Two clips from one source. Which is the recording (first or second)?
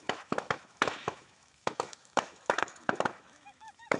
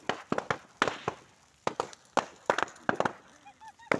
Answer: second